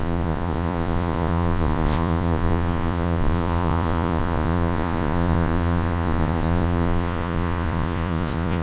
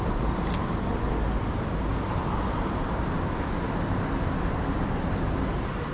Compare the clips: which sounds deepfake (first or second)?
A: first